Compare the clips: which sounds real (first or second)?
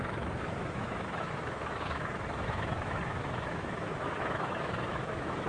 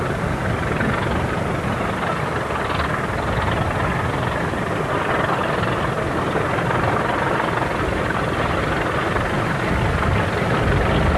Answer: second